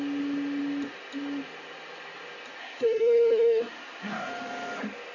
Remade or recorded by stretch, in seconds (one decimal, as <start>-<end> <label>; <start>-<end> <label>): 0.0-2.6 recorded; 2.6-4.3 remade; 4.3-5.1 recorded